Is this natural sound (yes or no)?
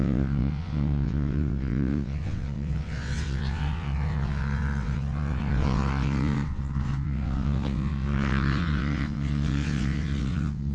no